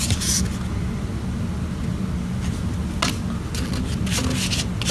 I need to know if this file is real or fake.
real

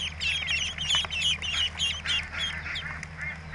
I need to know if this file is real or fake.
real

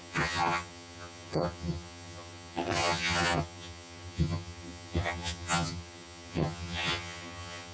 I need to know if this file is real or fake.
fake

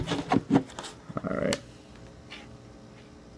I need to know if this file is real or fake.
real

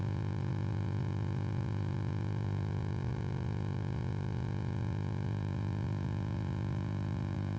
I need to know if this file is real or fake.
fake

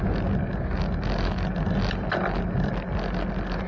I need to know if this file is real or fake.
real